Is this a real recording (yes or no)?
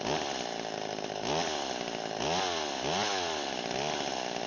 yes